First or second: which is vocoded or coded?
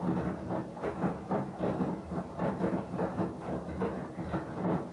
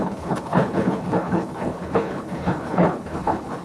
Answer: second